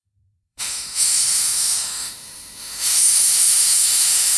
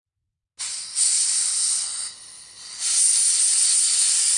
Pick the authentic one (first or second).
second